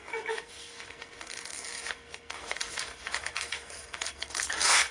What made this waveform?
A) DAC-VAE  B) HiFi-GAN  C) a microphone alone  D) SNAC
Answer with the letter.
D